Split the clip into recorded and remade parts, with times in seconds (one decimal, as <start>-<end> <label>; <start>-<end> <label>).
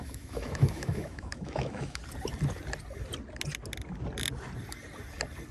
0.0-2.0 remade; 2.0-5.5 recorded